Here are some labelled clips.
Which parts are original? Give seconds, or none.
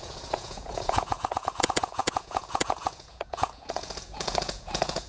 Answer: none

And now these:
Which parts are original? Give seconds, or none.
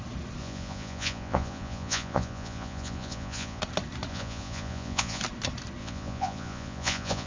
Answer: 0.0-0.4; 3.6-4.1; 5.2-5.8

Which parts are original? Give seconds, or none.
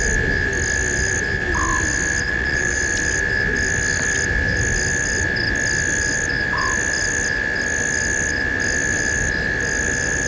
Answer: 0.0-2.3; 2.8-10.3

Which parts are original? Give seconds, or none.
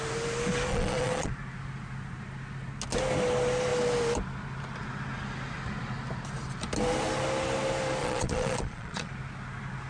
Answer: 0.0-0.7; 1.3-8.0; 9.1-9.9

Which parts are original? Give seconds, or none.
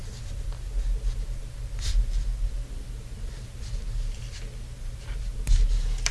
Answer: 0.0-6.1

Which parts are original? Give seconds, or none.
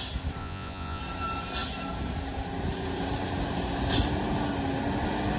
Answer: 0.0-0.4; 1.0-5.4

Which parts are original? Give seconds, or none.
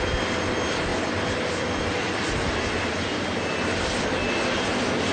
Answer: 0.0-5.1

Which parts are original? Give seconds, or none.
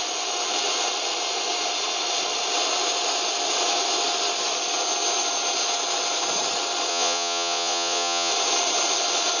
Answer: 0.0-6.9; 8.3-9.4